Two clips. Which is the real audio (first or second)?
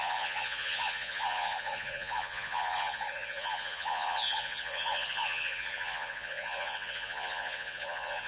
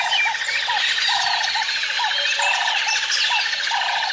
second